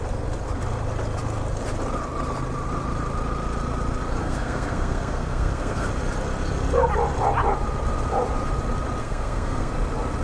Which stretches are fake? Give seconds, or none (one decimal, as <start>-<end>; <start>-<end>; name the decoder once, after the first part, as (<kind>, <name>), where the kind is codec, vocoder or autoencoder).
4.2-5.9 (codec, SNAC); 9.0-9.7